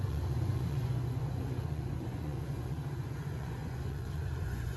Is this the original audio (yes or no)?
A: no